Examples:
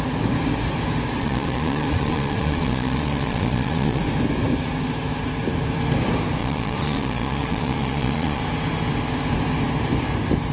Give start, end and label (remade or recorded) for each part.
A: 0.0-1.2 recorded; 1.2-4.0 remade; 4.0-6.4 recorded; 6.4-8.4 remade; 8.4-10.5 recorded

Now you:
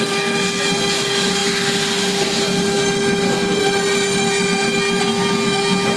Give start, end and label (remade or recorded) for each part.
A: 0.0-6.0 recorded

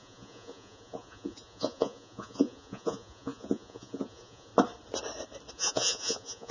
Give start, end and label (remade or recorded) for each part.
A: 0.0-4.5 remade; 4.5-5.5 recorded; 5.5-6.5 remade

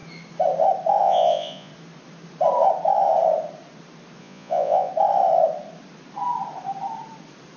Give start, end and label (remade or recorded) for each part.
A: 0.0-1.0 recorded; 1.0-1.7 remade; 1.7-4.2 recorded; 4.2-4.9 remade; 4.9-7.6 recorded

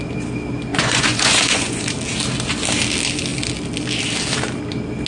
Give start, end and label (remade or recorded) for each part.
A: 0.0-0.7 recorded; 0.7-1.8 remade; 1.8-5.1 recorded

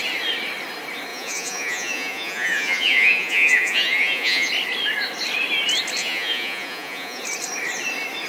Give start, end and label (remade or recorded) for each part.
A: 0.0-1.1 recorded; 1.1-4.5 remade; 4.5-6.0 recorded; 6.0-7.2 remade; 7.2-8.3 recorded